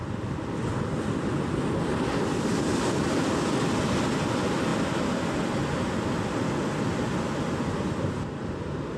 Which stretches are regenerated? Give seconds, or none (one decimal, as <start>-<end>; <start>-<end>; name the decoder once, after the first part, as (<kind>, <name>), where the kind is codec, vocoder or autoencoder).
none